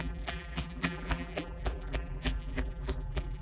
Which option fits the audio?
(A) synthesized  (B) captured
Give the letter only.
A